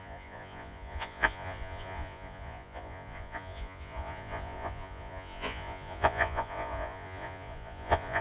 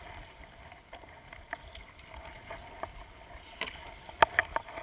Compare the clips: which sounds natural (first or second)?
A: second